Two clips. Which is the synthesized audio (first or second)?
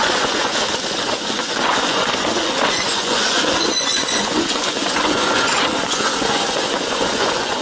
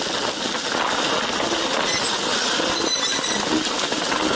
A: first